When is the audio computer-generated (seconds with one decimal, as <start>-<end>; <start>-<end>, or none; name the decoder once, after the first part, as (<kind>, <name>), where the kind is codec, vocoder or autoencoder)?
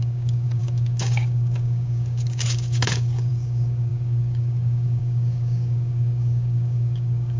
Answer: 0.0-7.4 (codec, DAC)